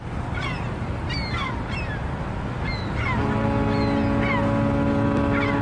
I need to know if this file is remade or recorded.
recorded